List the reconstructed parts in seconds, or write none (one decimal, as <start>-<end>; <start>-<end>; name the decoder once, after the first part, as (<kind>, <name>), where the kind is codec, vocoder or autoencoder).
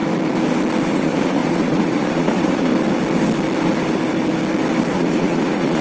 0.9-2.7 (vocoder, Vocos); 4.9-5.8